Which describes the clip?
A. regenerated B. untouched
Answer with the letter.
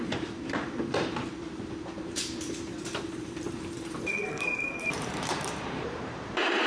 A